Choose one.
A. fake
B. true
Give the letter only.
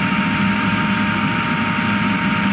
B